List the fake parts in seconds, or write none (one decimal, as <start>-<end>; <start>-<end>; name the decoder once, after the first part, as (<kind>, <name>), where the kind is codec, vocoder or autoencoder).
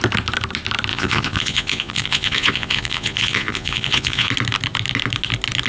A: 0.9-4.3 (vocoder, Vocos)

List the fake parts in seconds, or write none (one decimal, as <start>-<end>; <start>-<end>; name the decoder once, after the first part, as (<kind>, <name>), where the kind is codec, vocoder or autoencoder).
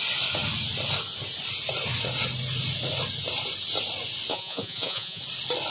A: 4.3-5.2 (vocoder, Vocos)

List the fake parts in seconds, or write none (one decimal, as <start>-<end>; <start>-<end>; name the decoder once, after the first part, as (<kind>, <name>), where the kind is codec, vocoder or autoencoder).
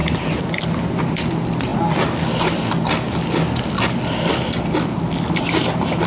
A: none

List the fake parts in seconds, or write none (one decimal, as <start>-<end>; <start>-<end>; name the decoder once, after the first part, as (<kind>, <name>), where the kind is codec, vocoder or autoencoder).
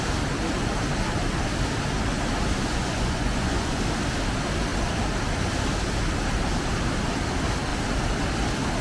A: 2.7-3.8 (vocoder, Vocos)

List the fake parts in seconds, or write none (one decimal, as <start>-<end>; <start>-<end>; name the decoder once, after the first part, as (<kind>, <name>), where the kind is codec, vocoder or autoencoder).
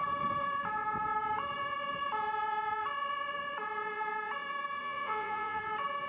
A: 4.8-5.6 (vocoder, Vocos)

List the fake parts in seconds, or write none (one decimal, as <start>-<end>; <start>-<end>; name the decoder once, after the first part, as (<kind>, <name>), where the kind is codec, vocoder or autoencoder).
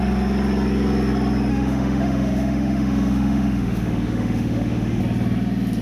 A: 1.5-5.0 (autoencoder, DAC-VAE)